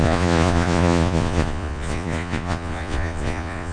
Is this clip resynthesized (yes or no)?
yes